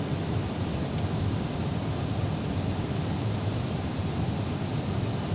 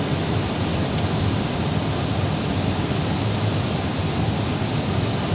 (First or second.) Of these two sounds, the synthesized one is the first